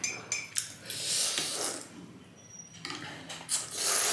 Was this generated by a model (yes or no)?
no